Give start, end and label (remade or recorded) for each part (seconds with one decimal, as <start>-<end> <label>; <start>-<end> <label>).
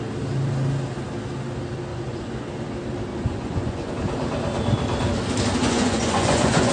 0.0-1.9 recorded; 1.9-2.5 remade; 2.5-3.1 recorded; 3.1-3.9 remade; 3.9-5.6 recorded; 5.6-6.7 remade